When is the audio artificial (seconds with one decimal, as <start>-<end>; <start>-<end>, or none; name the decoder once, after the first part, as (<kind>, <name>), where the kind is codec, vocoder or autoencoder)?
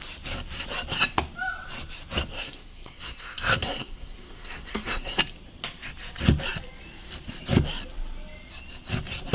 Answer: 2.3-5.2 (codec, SNAC)